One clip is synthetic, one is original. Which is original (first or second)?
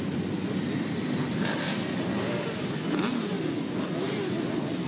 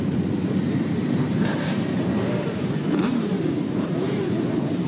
first